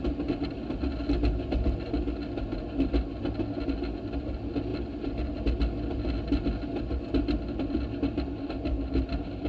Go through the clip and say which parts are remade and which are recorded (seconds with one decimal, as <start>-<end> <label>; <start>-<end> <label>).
0.0-9.5 recorded